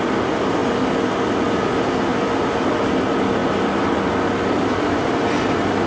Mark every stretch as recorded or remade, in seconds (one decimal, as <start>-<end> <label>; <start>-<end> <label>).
0.0-5.9 recorded

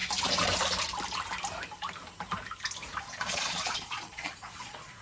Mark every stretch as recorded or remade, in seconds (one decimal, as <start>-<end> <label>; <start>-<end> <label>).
0.0-3.0 recorded; 3.0-5.0 remade

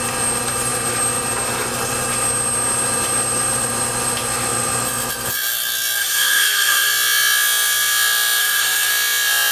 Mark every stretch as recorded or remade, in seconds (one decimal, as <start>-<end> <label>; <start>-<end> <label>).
0.0-6.0 recorded; 6.0-6.9 remade; 6.9-8.4 recorded; 8.4-8.9 remade; 8.9-9.5 recorded

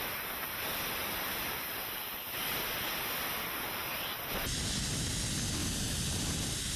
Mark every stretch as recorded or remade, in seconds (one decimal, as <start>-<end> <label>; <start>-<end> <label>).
0.0-1.0 recorded; 1.0-1.5 remade; 1.5-5.6 recorded; 5.6-6.2 remade; 6.2-6.8 recorded

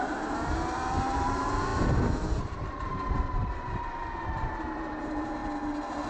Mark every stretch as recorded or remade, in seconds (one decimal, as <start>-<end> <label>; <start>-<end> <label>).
0.0-5.4 remade; 5.4-6.1 recorded

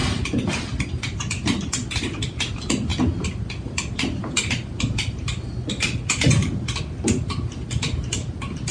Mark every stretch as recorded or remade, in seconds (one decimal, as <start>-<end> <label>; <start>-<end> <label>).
0.0-8.7 recorded